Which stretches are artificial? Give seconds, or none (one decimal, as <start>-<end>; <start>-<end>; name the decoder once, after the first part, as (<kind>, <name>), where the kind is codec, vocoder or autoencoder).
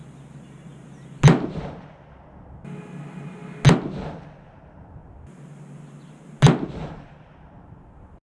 none